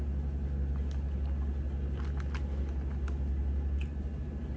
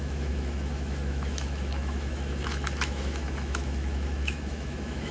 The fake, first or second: second